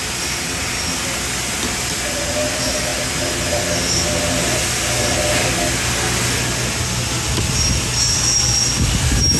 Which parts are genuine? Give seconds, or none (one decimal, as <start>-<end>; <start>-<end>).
0.0-9.4